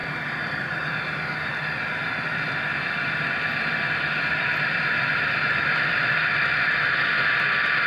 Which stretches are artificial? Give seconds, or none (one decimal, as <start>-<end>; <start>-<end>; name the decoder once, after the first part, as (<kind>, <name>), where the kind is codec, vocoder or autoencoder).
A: 0.0-0.6 (vocoder, BigVGAN v2); 1.5-6.2